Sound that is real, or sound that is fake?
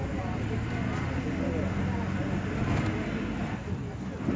real